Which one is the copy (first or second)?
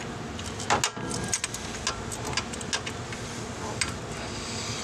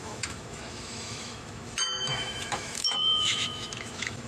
second